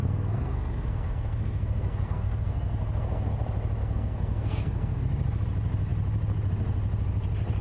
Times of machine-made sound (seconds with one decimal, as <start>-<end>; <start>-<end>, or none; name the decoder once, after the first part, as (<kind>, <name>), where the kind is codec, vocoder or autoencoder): 0.0-3.3 (codec, SNAC); 3.8-5.0